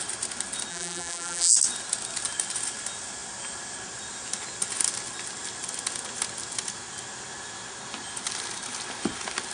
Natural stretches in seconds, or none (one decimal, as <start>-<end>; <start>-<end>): 0.0-0.7; 1.5-9.5